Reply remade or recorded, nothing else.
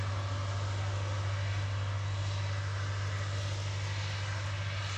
recorded